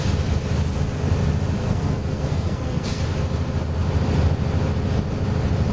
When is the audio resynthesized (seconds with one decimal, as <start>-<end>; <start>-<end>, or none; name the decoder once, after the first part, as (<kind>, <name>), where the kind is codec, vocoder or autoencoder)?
1.6-3.0 (codec, SNAC)